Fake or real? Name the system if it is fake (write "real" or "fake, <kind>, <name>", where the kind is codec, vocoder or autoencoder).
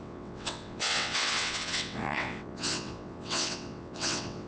fake, vocoder, WaveNeXt